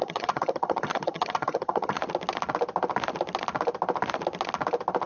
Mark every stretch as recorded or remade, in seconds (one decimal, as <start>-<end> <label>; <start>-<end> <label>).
0.0-2.0 remade; 2.0-5.1 recorded